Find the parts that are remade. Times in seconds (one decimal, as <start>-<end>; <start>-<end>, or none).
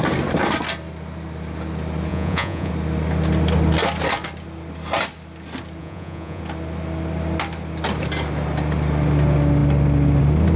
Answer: 2.1-2.7; 5.8-6.4